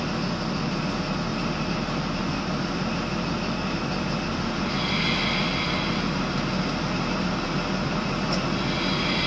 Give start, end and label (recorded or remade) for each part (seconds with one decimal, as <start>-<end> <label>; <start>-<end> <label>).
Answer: 0.0-1.3 recorded; 1.3-2.1 remade; 2.1-9.3 recorded